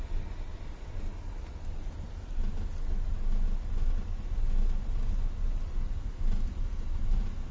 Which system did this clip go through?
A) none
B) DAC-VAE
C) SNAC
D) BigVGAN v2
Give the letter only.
A